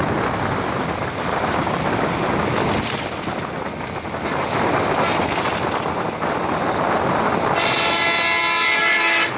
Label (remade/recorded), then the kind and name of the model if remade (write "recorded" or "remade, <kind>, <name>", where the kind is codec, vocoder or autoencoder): recorded